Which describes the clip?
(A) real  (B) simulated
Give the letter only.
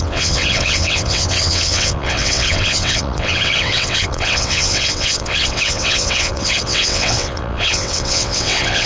B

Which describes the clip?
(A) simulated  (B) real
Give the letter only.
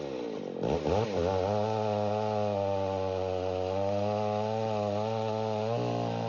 B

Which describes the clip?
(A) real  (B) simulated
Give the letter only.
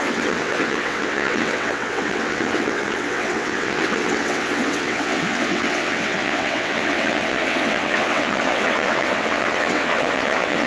B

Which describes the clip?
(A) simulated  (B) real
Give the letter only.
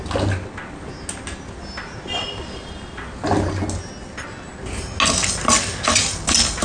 B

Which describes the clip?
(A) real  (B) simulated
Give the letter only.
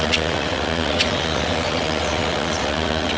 B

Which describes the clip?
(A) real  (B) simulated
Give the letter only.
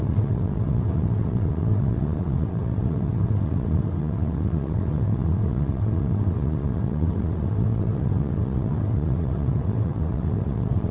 B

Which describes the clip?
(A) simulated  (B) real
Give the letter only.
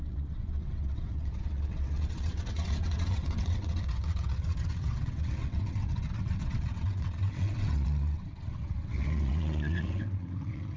A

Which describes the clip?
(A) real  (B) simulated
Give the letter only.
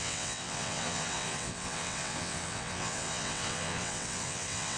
B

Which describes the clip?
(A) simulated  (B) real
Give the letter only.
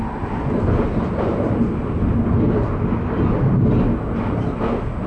B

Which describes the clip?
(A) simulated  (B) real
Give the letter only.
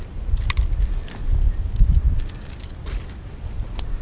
B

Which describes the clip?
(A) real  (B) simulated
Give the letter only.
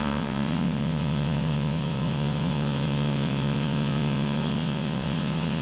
B